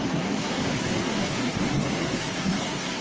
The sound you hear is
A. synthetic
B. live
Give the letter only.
A